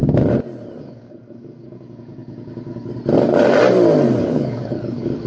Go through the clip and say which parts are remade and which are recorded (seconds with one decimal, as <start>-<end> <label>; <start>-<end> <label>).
0.0-0.8 recorded; 0.8-2.9 remade; 2.9-4.2 recorded; 4.2-5.3 remade